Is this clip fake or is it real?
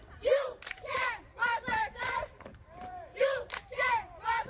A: fake